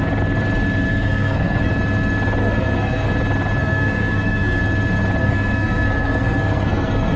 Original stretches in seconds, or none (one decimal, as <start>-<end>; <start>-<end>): 0.0-0.9; 1.7-2.4; 3.1-3.6; 4.6-5.2